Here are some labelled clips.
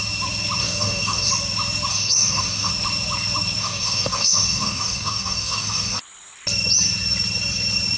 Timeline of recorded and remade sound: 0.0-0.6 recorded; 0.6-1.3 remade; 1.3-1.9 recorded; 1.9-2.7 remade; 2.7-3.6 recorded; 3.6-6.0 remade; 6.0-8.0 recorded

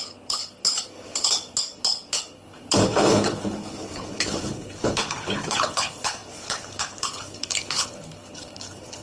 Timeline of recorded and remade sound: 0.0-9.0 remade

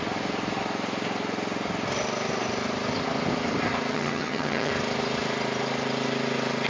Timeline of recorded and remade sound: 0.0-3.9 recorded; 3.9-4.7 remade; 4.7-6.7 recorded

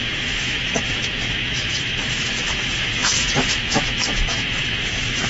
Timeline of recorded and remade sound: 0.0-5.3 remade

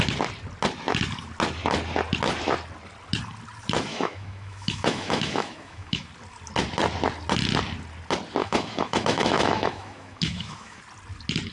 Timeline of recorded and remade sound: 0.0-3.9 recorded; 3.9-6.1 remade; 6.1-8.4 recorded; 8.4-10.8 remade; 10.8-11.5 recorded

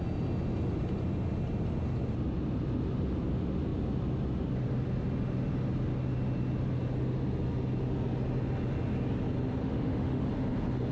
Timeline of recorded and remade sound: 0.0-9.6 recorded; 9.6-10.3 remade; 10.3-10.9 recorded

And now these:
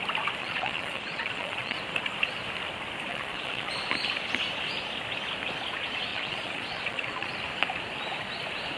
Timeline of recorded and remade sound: 0.0-0.4 recorded; 0.4-1.8 remade; 1.8-3.1 recorded; 3.1-3.7 remade; 3.7-6.1 recorded; 6.1-7.3 remade; 7.3-8.8 recorded